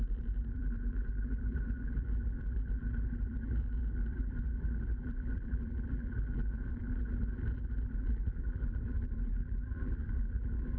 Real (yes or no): no